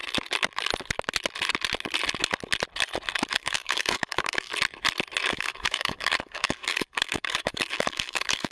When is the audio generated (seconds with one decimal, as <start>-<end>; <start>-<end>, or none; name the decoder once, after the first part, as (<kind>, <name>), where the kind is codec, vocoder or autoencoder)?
3.3-4.5 (codec, DAC); 5.3-8.5